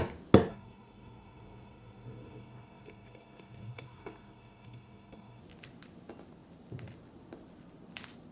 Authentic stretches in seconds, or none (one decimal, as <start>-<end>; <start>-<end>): 0.0-0.5; 5.4-8.3